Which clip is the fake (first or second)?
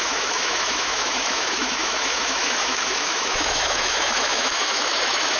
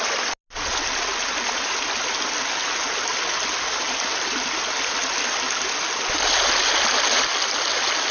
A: first